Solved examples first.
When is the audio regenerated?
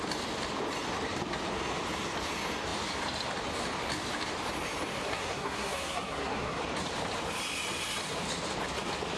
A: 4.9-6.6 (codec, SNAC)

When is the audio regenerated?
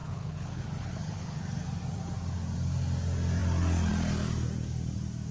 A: 0.0-1.4 (codec, HILCodec)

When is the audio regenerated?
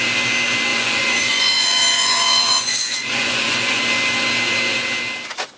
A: 0.7-3.8 (vocoder, Vocos)